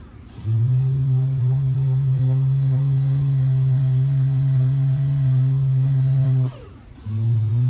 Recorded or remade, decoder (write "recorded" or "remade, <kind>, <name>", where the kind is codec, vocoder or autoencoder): remade, vocoder, Vocos